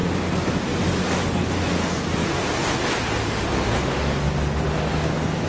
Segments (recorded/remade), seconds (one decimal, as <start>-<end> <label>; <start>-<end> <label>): 0.0-0.8 remade; 0.8-5.5 recorded